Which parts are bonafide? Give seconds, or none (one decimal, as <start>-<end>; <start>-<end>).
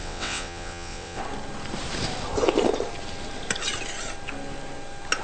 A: 1.2-5.2